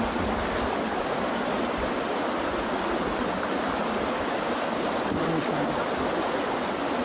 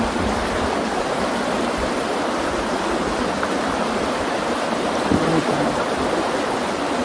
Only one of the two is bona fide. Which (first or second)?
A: first